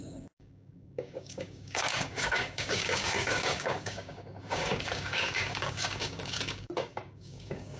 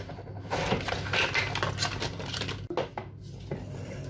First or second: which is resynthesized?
first